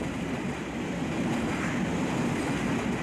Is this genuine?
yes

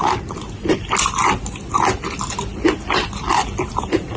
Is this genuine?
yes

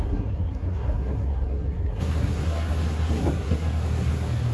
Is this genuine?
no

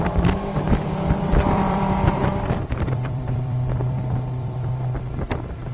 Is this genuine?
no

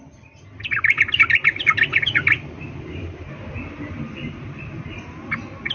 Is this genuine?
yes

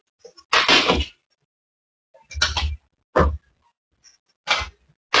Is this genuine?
yes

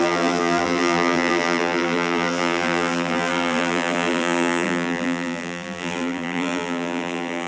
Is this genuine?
no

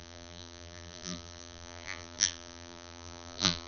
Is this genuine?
no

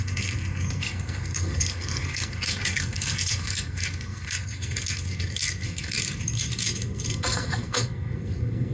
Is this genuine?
no